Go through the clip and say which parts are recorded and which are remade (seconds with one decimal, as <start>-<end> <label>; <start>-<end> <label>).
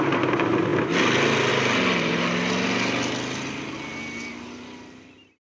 0.0-5.4 recorded